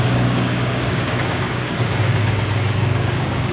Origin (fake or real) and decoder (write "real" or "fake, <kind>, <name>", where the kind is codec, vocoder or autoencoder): fake, codec, DAC